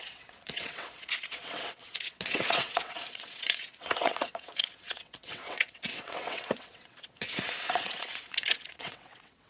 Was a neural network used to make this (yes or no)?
yes